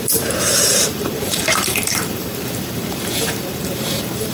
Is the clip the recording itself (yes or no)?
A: no